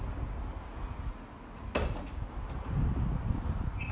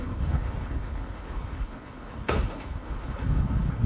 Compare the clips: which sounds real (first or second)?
first